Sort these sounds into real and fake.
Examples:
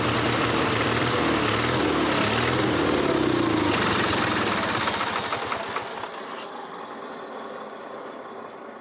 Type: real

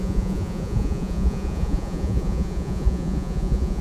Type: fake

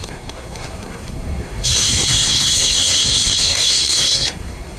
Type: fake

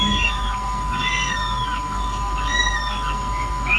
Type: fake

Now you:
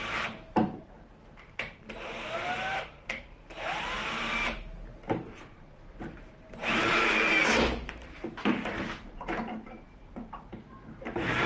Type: fake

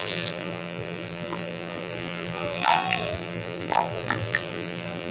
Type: fake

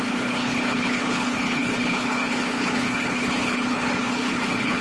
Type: fake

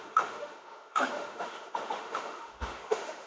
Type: fake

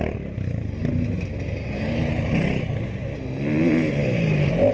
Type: real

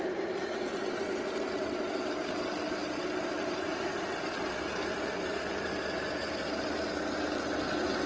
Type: real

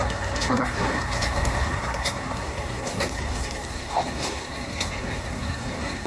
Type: fake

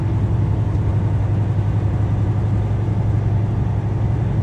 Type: real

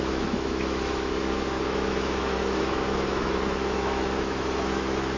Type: fake